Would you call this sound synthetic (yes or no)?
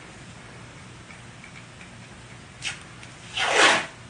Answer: no